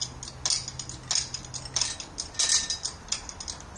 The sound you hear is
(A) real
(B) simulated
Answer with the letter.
A